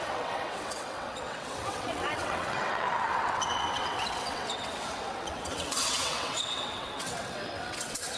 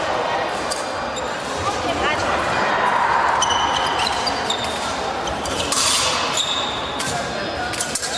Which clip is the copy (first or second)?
first